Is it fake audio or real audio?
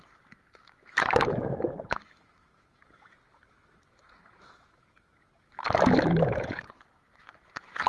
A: fake